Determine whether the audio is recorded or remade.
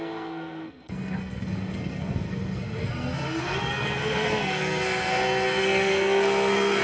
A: remade